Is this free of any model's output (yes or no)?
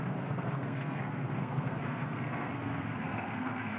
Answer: no